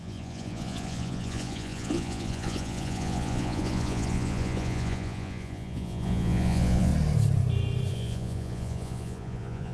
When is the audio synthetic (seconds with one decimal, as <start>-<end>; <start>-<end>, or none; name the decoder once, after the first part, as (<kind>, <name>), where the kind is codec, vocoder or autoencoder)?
0.0-6.9 (vocoder, Vocos); 7.9-9.7